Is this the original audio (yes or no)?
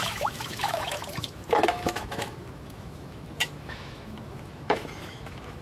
no